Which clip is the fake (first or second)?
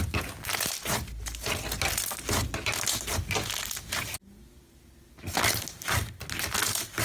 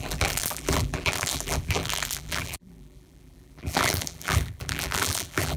second